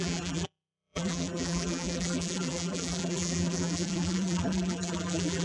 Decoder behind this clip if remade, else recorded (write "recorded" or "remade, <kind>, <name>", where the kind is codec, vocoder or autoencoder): remade, vocoder, BigVGAN v2